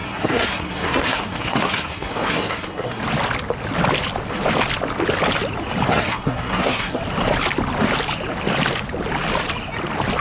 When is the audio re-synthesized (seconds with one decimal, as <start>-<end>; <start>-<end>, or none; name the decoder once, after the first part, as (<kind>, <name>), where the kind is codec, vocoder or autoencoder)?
0.0-3.0 (codec, SNAC); 5.9-7.0